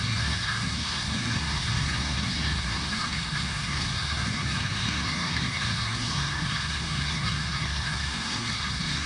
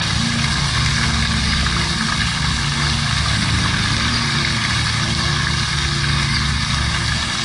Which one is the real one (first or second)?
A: second